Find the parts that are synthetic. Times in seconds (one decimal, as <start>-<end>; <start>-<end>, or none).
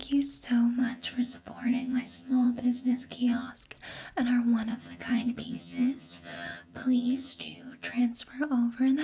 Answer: 0.8-3.5; 4.7-8.0